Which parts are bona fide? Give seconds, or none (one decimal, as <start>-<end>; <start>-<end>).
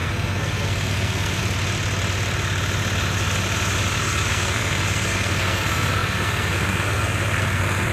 1.4-4.0